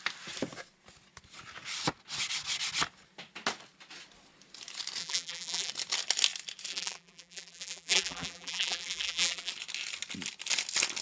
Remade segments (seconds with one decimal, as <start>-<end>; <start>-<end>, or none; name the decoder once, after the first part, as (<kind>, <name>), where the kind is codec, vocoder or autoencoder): 5.0-5.7 (vocoder, BigVGAN v2); 6.7-9.5